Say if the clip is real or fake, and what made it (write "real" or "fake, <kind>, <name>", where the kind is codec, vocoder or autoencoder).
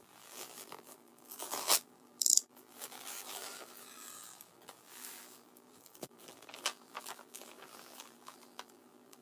fake, vocoder, BigVGAN v2